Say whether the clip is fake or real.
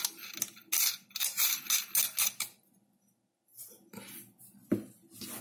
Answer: real